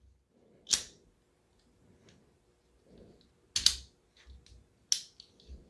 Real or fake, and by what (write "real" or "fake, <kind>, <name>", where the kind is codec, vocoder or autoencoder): real